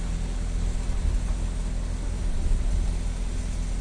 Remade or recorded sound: recorded